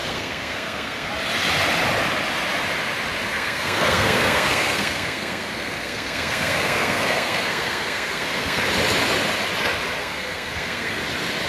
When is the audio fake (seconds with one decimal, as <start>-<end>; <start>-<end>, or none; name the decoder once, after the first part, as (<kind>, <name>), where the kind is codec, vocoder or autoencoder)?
0.0-1.1 (codec, SNAC); 3.3-8.6; 10.0-11.0